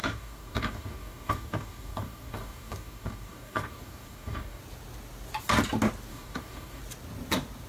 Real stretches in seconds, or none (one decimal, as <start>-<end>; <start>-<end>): 4.6-6.1; 6.8-7.7